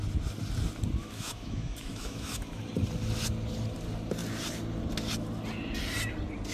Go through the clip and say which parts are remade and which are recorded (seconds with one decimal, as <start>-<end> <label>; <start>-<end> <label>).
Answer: 0.0-1.0 recorded; 1.0-2.6 remade; 2.6-6.5 recorded